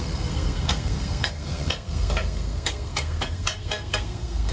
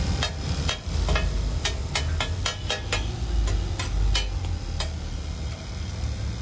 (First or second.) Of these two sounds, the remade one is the first